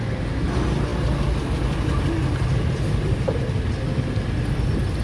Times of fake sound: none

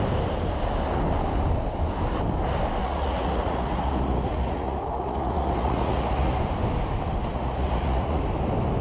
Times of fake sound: 2.8-6.4; 7.3-8.2

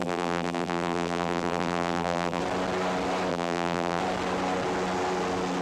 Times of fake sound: 0.0-2.4; 3.3-4.0

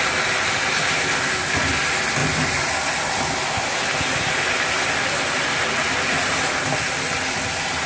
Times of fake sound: none

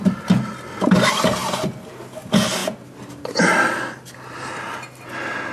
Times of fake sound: none

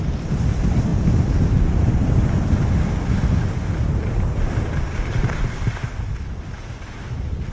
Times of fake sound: none

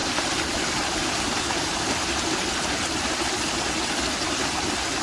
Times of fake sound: none

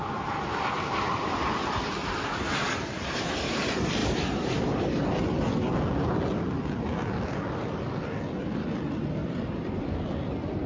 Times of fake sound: 9.2-9.8